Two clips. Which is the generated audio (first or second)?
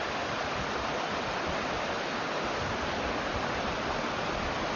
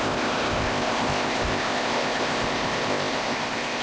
second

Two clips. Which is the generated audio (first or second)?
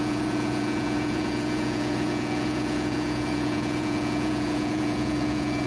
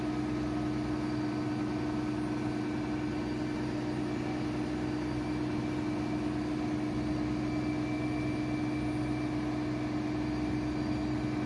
first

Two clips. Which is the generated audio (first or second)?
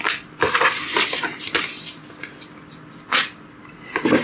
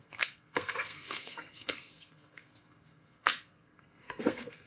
second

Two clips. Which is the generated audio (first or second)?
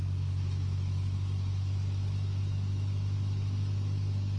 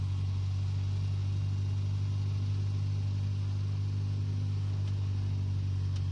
first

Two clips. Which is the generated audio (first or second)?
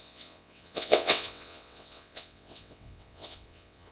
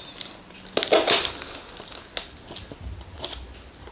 first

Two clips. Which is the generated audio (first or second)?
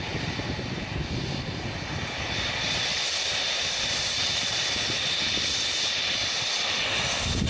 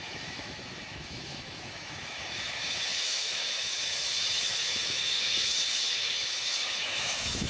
second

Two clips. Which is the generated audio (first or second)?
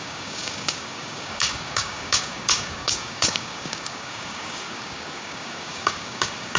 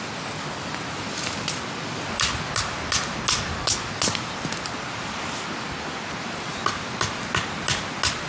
first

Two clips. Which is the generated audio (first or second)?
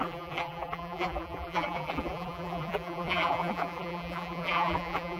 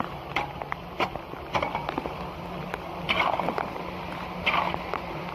first